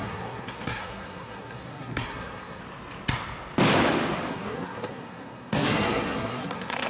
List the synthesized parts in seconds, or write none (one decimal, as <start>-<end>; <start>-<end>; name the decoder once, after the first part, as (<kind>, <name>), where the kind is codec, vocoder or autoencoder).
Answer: 0.0-2.6 (codec, SNAC); 4.3-6.9